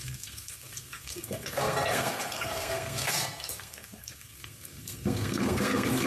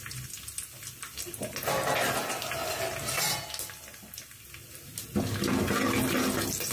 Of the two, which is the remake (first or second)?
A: first